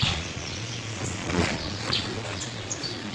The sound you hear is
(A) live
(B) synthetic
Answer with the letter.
B